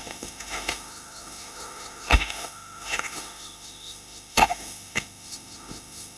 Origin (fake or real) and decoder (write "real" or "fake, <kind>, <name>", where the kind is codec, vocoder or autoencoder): fake, autoencoder, DAC-VAE